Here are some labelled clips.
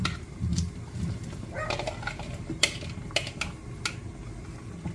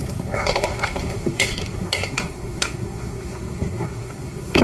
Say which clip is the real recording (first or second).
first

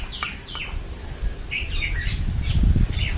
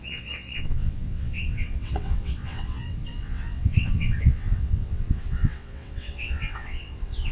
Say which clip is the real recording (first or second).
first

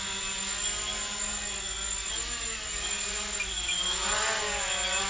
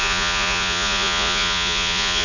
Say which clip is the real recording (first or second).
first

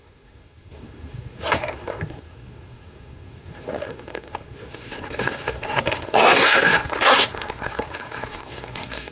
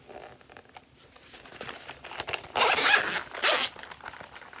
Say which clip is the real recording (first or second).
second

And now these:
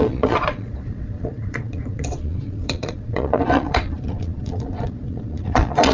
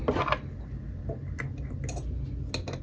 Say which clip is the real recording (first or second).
second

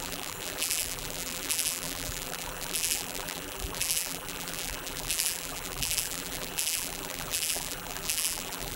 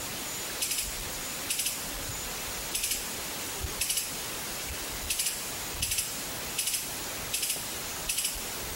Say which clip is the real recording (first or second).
second